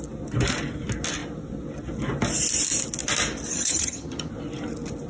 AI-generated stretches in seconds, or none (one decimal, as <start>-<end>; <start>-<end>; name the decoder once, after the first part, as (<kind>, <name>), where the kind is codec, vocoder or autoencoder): 3.5-4.3 (vocoder, HiFi-GAN)